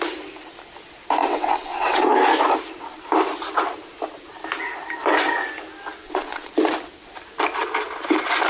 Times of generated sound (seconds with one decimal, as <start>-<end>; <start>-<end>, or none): 1.2-2.1; 6.0-6.5